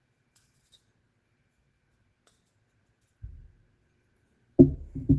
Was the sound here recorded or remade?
recorded